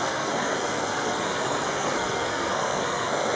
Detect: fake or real fake